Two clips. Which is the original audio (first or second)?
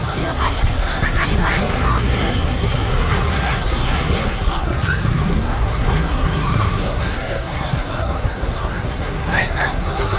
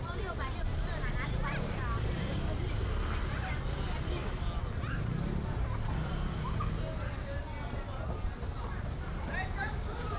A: second